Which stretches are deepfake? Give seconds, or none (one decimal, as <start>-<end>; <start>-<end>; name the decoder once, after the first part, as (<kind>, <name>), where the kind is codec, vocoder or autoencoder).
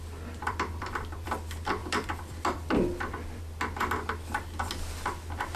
0.4-1.3 (vocoder, BigVGAN v2); 1.8-3.4